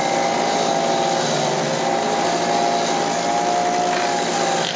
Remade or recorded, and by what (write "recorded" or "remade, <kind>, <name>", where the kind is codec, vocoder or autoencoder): recorded